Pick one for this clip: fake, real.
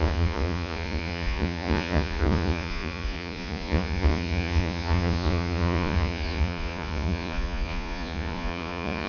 fake